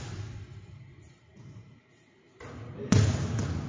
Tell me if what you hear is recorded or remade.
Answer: recorded